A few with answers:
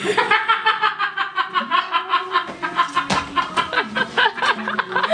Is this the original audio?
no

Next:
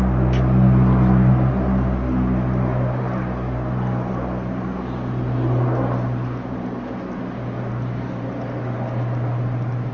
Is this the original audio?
yes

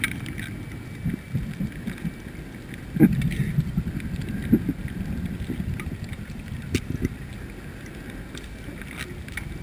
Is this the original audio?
yes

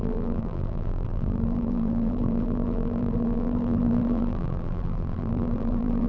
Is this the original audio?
no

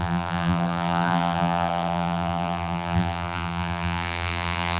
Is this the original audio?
no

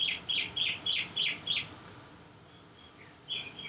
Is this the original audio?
yes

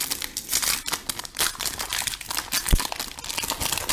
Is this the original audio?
yes